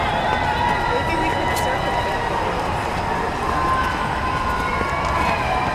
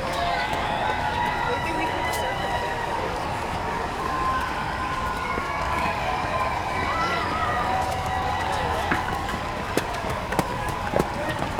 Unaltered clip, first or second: first